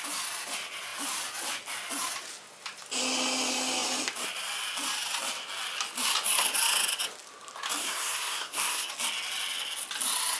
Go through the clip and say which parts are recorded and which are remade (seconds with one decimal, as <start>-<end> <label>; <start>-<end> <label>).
0.0-7.8 recorded; 7.8-8.9 remade; 8.9-10.4 recorded